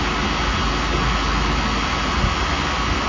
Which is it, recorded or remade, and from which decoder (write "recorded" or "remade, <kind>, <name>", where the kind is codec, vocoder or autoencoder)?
recorded